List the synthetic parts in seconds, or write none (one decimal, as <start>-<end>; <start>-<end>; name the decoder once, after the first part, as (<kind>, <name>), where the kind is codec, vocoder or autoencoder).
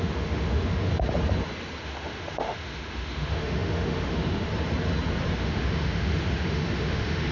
0.0-0.9 (autoencoder, DAC-VAE); 1.8-4.5; 5.3-7.3